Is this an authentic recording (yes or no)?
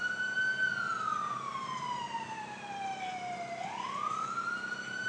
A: yes